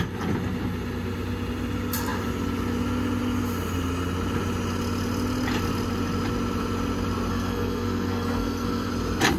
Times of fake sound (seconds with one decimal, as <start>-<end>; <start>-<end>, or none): 7.3-8.9